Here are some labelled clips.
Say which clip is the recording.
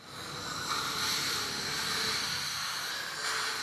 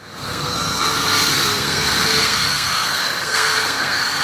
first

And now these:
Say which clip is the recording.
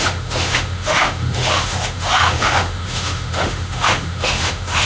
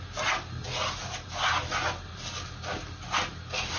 second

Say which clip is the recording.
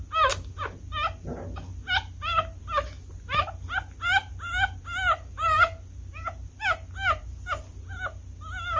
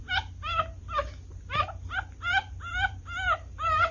first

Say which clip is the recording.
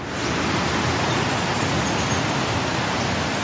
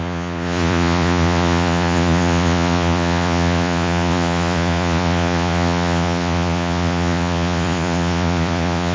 first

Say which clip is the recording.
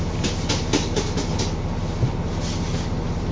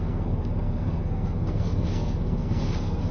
first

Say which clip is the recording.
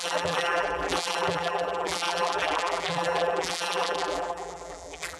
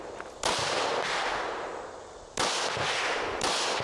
second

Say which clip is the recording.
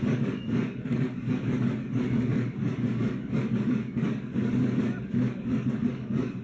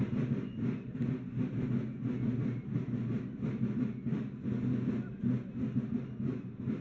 second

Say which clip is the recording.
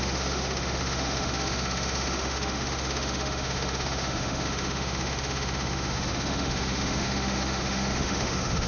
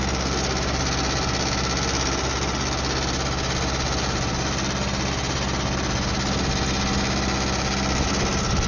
second